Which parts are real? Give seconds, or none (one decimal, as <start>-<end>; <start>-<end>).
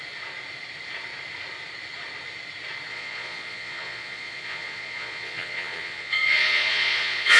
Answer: 0.0-2.9